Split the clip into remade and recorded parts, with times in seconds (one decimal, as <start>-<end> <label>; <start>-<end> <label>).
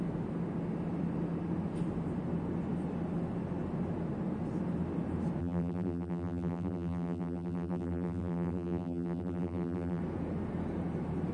0.0-5.4 recorded; 5.4-10.0 remade; 10.0-11.3 recorded